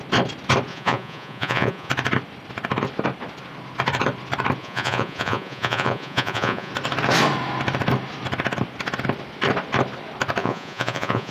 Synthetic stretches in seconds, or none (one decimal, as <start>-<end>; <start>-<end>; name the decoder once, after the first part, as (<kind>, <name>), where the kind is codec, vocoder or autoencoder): 0.7-1.9 (vocoder, Vocos); 4.6-6.7; 10.4-11.3